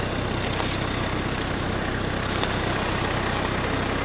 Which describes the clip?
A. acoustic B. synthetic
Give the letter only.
A